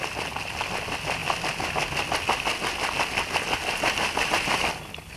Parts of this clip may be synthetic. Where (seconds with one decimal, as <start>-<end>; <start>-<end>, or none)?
none